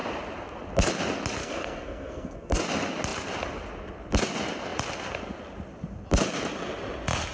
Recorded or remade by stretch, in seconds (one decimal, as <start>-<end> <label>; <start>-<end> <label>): 0.0-1.4 recorded; 1.4-2.6 remade; 2.6-7.3 recorded